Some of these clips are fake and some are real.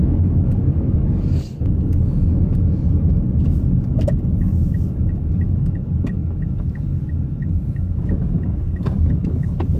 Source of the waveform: fake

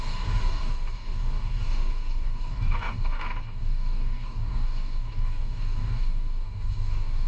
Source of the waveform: fake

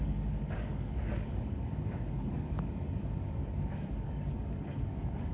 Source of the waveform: fake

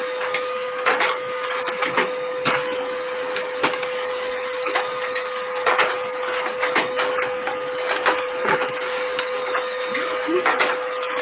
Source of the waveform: fake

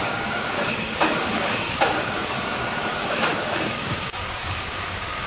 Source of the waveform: fake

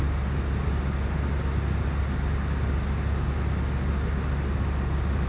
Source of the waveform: real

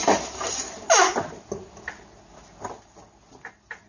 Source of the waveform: real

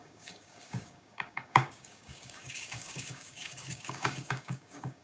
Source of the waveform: fake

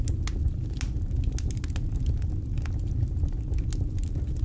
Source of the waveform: real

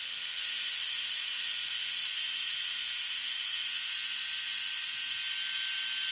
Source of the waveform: real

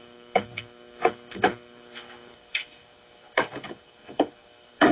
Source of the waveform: fake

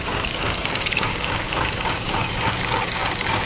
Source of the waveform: fake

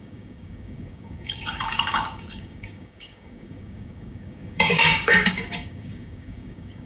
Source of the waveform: fake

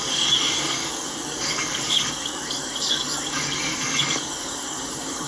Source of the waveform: fake